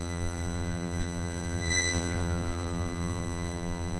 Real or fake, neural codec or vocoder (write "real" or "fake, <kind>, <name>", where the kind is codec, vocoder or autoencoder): fake, vocoder, BigVGAN v2